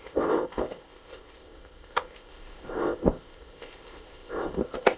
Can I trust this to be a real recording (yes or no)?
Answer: no